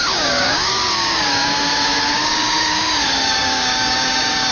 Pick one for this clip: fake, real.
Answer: fake